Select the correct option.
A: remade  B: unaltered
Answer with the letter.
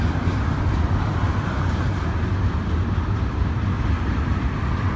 B